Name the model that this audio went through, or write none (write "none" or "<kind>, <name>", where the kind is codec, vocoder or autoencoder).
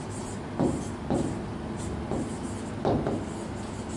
none